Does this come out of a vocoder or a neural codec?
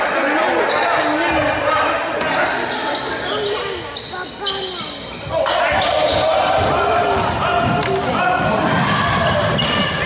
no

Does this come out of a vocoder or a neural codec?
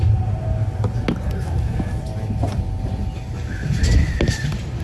no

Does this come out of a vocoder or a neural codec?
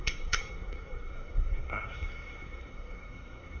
yes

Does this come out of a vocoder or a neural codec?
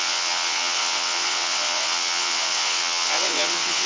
yes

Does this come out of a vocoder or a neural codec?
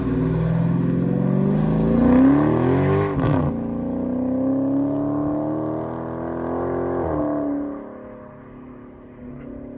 no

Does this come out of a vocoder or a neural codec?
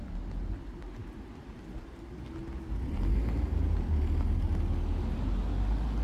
no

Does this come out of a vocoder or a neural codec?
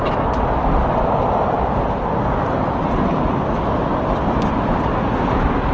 no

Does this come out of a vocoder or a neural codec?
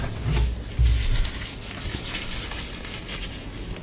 no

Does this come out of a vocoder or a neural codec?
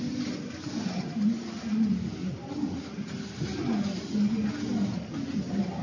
no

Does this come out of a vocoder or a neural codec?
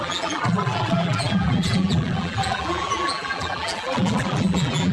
yes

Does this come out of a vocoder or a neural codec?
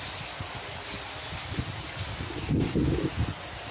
no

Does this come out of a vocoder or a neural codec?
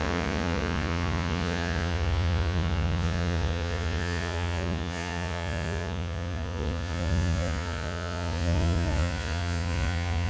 yes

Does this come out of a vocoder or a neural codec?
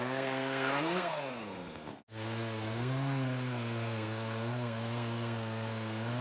yes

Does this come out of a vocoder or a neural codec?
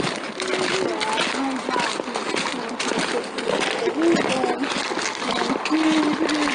no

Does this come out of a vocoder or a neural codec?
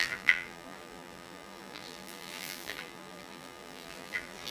yes